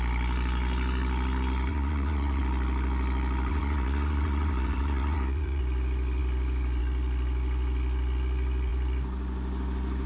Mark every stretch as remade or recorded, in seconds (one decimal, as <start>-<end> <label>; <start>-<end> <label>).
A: 0.0-1.7 recorded; 1.7-2.4 remade; 2.4-3.5 recorded; 3.5-5.6 remade; 5.6-10.1 recorded

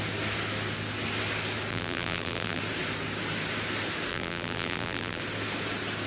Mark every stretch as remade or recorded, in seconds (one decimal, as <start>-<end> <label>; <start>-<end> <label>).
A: 0.0-1.7 recorded; 1.7-2.6 remade; 2.6-4.1 recorded; 4.1-5.2 remade; 5.2-6.1 recorded

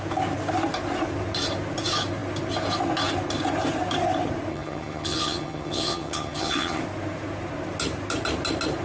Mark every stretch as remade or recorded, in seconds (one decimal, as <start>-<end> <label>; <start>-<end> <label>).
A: 0.0-4.5 recorded; 4.5-6.8 remade; 6.8-8.8 recorded

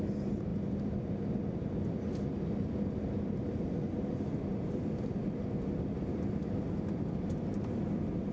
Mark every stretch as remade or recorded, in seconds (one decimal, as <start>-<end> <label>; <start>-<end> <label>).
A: 0.0-4.5 recorded; 4.5-5.2 remade; 5.2-8.3 recorded